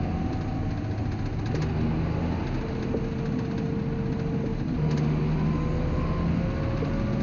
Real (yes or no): yes